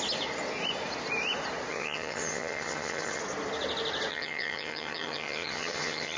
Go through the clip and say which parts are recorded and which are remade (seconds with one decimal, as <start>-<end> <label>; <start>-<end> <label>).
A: 0.0-1.7 recorded; 1.7-3.2 remade; 3.2-4.1 recorded; 4.1-6.2 remade